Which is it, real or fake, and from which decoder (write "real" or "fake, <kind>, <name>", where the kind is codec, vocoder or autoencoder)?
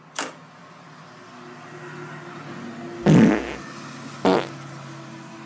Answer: real